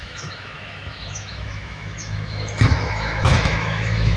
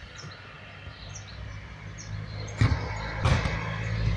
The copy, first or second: first